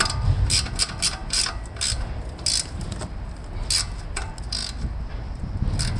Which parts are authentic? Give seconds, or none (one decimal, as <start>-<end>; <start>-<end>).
0.0-6.0